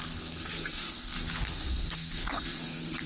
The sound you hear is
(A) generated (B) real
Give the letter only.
A